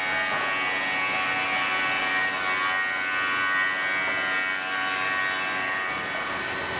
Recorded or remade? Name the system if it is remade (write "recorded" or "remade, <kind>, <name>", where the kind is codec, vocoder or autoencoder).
recorded